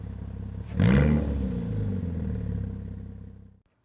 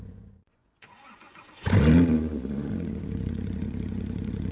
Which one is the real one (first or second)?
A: first